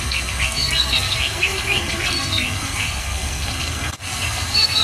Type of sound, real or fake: fake